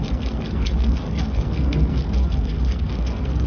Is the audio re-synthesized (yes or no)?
yes